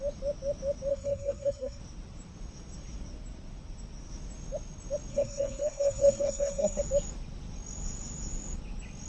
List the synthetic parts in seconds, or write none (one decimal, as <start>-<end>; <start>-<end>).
0.9-1.8; 5.1-6.8